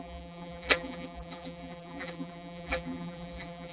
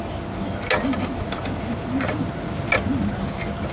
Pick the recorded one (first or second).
second